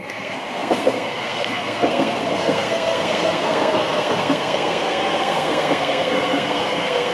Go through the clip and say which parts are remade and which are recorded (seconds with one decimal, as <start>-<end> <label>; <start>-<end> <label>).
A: 0.0-7.1 remade